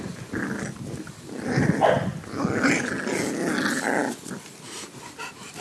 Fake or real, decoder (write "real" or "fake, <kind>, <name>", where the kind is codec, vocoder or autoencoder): real